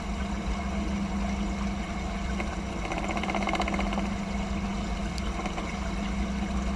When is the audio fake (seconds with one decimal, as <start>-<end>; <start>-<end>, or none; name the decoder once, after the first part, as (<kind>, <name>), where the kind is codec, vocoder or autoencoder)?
none